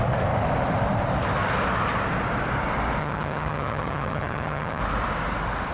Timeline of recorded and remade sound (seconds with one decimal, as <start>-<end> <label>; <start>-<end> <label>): 0.0-3.0 recorded; 3.0-4.8 remade; 4.8-5.7 recorded